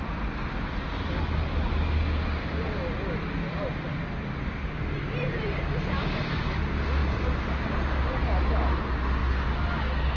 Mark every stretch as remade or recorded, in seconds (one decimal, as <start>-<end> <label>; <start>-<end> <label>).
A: 0.0-9.2 recorded; 9.2-9.7 remade; 9.7-10.2 recorded